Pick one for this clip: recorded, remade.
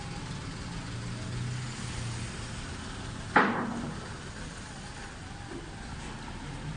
recorded